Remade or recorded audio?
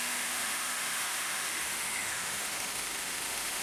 remade